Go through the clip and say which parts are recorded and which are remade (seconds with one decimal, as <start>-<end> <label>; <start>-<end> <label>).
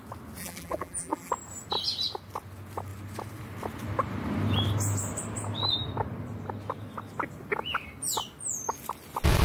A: 0.0-0.4 recorded; 0.4-1.3 remade; 1.3-9.4 recorded